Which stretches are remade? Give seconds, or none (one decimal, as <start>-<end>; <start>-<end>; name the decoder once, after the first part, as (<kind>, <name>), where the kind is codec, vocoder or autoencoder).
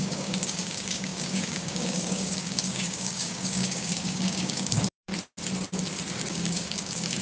0.0-5.1 (codec, DAC); 6.3-7.2